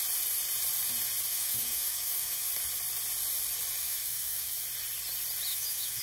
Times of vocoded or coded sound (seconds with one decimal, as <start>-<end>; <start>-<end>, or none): 1.3-2.5; 3.8-4.6; 5.5-6.0